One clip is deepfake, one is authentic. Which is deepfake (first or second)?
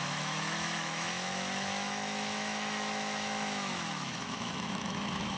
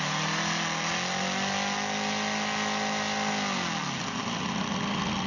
first